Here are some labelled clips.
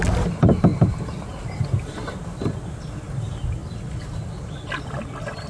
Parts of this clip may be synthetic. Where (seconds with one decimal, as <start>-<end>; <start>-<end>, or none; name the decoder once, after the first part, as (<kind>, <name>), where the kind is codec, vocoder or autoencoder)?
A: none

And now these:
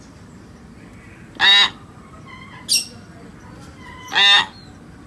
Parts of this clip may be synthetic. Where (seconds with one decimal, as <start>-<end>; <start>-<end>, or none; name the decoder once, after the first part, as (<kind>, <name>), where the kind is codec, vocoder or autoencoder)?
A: none

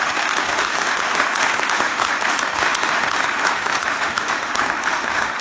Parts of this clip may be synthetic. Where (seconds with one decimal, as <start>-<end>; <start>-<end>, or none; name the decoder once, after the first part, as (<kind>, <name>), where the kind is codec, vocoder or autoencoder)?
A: 0.0-5.4 (autoencoder, DAC-VAE)

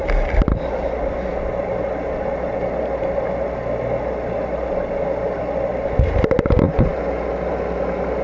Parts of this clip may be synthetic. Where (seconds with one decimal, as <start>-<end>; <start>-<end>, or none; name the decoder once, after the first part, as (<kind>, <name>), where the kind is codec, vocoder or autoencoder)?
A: none